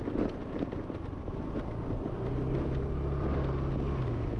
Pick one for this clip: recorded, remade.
recorded